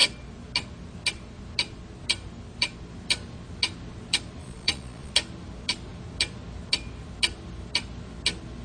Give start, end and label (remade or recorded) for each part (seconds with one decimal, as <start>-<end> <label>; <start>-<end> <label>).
0.0-4.4 recorded; 4.4-5.1 remade; 5.1-8.6 recorded